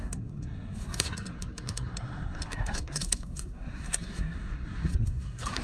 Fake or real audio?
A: fake